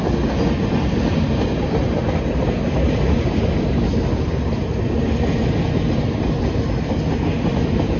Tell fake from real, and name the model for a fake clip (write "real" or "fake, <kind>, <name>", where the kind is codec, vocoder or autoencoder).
real